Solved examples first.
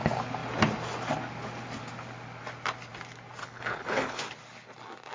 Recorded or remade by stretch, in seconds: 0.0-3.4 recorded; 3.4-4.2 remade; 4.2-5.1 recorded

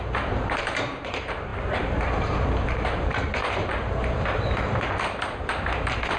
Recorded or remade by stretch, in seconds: 0.0-6.2 remade

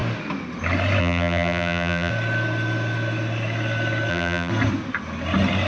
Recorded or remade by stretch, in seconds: 0.0-1.0 recorded; 1.0-2.1 remade; 2.1-4.1 recorded; 4.1-4.5 remade; 4.5-5.7 recorded

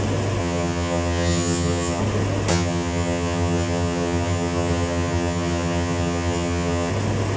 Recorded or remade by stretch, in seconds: 0.0-0.4 recorded; 0.4-2.0 remade; 2.0-2.5 recorded; 2.5-6.9 remade; 6.9-7.4 recorded

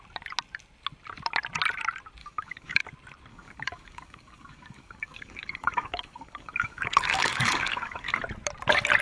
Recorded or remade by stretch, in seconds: 0.0-2.2 recorded; 2.2-2.8 remade; 2.8-3.3 recorded; 3.3-8.2 remade; 8.2-9.0 recorded

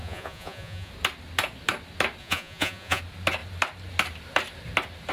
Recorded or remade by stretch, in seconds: 0.0-0.9 remade; 0.9-2.2 recorded; 2.2-3.0 remade; 3.0-5.1 recorded